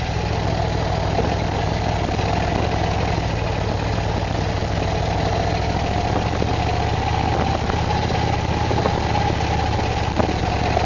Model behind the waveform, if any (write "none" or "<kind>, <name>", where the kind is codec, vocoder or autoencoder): none